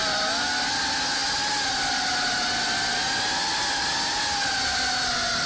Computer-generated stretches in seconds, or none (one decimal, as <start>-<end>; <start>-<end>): none